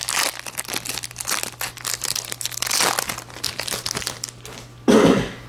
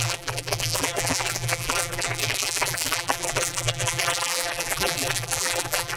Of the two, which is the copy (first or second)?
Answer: second